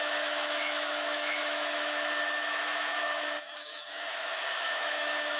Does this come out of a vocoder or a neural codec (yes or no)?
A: yes